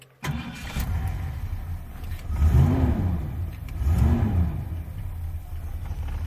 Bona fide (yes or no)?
yes